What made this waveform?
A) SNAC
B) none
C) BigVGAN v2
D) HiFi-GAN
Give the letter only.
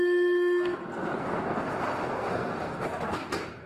A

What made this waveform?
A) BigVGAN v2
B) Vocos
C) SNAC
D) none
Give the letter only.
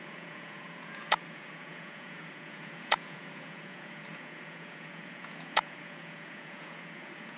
B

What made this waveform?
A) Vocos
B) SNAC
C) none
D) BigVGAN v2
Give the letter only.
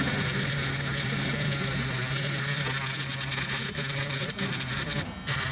C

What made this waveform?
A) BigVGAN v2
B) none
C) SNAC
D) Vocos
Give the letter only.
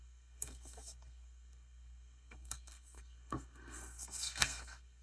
C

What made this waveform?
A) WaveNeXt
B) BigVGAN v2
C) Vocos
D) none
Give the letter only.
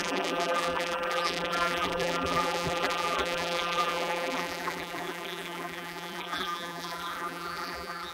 B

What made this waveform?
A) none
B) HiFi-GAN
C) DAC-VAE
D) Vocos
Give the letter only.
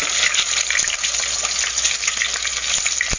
A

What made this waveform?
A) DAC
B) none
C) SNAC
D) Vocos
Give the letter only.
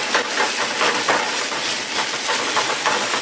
B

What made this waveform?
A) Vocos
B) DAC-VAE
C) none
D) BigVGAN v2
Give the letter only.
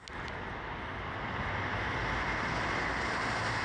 C